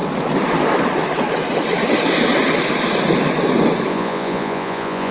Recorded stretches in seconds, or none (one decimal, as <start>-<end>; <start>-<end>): 0.0-3.9